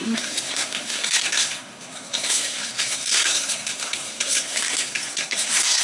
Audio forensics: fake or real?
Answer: fake